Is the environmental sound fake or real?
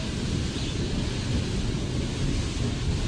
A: real